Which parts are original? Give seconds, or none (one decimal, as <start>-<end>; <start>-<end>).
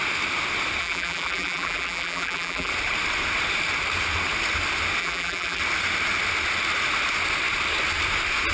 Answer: 0.0-0.8; 2.7-5.0; 5.6-8.5